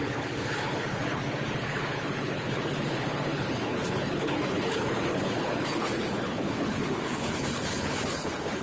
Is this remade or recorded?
remade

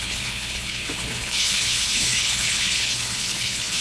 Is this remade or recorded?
remade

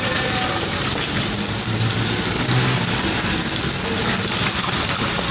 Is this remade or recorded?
recorded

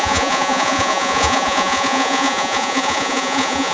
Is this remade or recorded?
remade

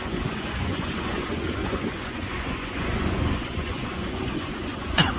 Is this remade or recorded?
remade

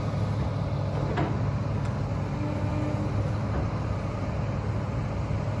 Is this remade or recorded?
recorded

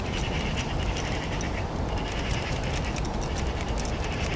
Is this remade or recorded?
remade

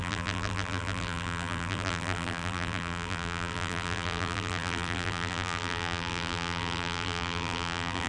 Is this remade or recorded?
remade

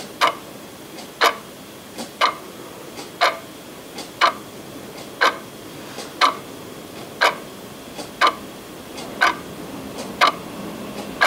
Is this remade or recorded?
recorded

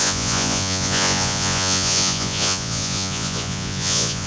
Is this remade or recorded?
remade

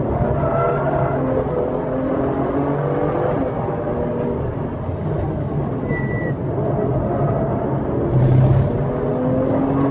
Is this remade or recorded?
recorded